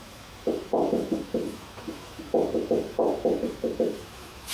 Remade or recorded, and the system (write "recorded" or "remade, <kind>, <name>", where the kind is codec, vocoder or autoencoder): remade, autoencoder, DAC-VAE